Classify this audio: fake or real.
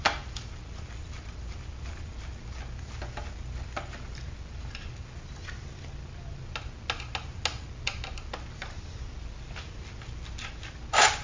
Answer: real